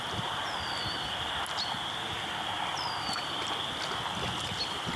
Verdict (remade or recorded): recorded